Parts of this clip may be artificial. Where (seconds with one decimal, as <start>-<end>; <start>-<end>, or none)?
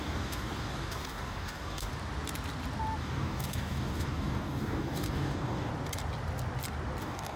0.0-1.9; 3.0-5.7; 7.0-7.4